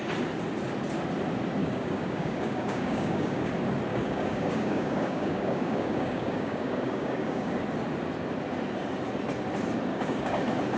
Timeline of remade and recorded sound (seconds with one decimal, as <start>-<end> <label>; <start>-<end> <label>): 0.0-1.6 recorded; 1.6-3.5 remade; 3.5-3.9 recorded; 3.9-7.5 remade; 7.5-9.9 recorded; 9.9-10.4 remade; 10.4-10.8 recorded